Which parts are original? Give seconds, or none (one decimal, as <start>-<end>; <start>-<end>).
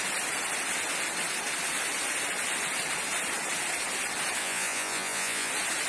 0.0-4.4; 5.5-5.9